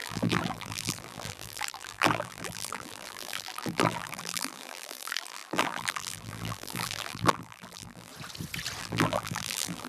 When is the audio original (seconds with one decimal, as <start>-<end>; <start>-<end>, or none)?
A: 8.1-8.8